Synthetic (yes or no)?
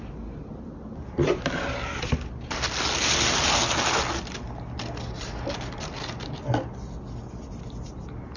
no